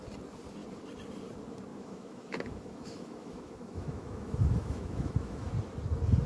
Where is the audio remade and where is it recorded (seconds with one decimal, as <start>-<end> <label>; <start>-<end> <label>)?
0.0-1.7 recorded; 1.7-5.5 remade; 5.5-6.3 recorded